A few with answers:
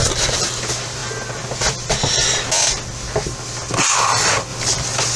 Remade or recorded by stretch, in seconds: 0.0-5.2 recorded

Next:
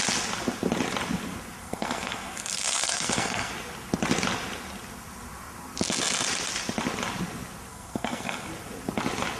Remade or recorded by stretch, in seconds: 0.0-1.6 recorded; 1.6-3.5 remade; 3.5-7.7 recorded; 7.7-8.5 remade; 8.5-9.4 recorded